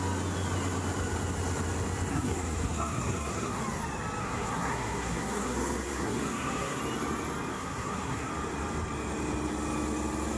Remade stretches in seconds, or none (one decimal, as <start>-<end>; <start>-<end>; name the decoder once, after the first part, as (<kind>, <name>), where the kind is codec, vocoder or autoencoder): 2.1-3.6 (codec, SNAC); 4.2-6.8; 7.5-8.3